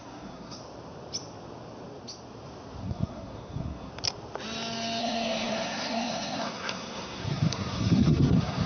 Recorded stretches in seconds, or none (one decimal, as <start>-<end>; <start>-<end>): 0.6-2.8; 3.9-5.0